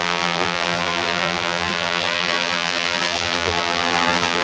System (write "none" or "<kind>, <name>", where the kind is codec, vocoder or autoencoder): vocoder, BigVGAN v2